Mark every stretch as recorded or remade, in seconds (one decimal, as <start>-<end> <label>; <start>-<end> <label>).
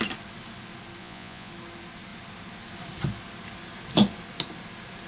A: 0.0-1.0 recorded; 1.0-1.5 remade; 1.5-5.1 recorded